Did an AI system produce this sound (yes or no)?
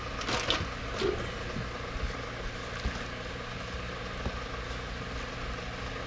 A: no